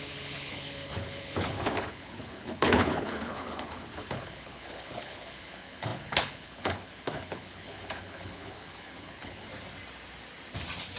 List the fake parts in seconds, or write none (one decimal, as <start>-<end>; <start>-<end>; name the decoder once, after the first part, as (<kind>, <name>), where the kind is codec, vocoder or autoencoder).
0.0-9.5 (codec, HILCodec)